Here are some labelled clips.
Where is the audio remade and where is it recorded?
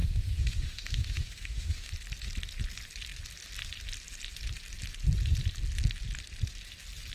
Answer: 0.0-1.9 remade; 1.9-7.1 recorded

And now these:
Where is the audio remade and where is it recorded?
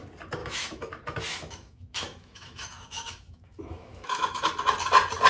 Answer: 0.0-0.4 recorded; 0.4-0.9 remade; 0.9-1.3 recorded; 1.3-4.5 remade; 4.5-5.3 recorded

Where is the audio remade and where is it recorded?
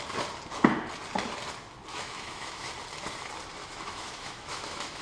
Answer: 0.0-1.9 recorded; 1.9-2.7 remade; 2.7-3.6 recorded; 3.6-5.0 remade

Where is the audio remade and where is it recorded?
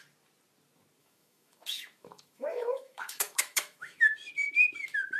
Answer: 0.0-1.0 recorded; 1.0-4.0 remade; 4.0-5.2 recorded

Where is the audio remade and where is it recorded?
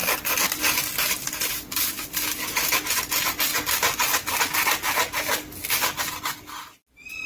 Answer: 0.0-7.3 recorded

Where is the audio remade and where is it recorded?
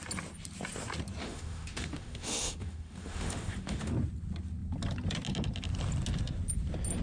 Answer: 0.0-1.2 recorded; 1.2-3.9 remade; 3.9-7.0 recorded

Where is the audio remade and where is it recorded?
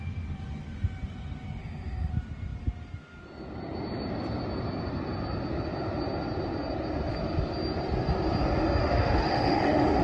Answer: 0.0-1.6 recorded; 1.6-2.1 remade; 2.1-8.8 recorded; 8.8-10.0 remade